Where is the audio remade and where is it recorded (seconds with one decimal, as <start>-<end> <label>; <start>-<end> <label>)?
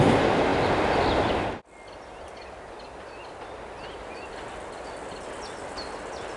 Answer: 0.0-6.4 recorded